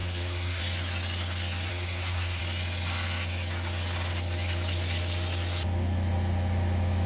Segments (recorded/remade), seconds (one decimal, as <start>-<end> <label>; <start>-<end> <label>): 0.0-0.6 remade; 0.6-1.7 recorded; 1.7-2.4 remade; 2.4-7.1 recorded

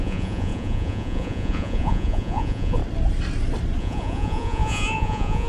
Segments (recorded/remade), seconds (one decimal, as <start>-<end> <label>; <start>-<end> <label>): 0.0-2.8 remade; 2.8-3.8 recorded; 3.8-5.5 remade

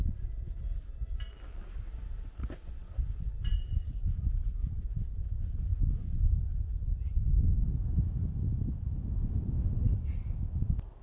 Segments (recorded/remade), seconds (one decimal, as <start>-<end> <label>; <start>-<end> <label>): 0.0-11.0 recorded

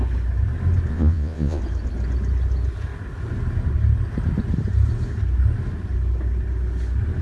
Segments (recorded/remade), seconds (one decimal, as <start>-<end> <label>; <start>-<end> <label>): 0.0-0.9 recorded; 0.9-1.6 remade; 1.6-7.2 recorded

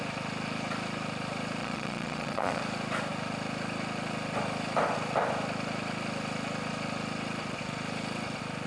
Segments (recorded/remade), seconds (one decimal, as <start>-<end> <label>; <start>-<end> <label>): 0.0-1.6 recorded; 1.6-2.6 remade; 2.6-8.7 recorded